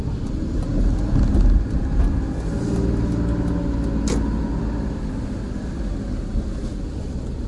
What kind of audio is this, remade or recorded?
recorded